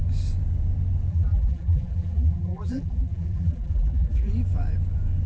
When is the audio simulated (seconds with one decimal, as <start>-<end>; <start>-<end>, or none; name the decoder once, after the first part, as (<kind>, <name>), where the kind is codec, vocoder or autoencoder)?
1.1-4.3 (vocoder, BigVGAN v2)